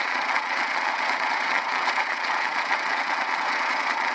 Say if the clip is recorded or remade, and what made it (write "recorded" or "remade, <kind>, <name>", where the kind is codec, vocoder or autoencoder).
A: remade, vocoder, WaveNeXt